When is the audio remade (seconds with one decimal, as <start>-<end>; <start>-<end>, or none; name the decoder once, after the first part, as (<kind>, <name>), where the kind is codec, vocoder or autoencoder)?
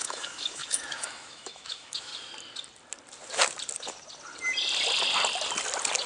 0.0-2.1 (autoencoder, DAC-VAE)